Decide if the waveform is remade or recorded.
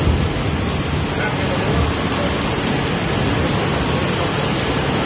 recorded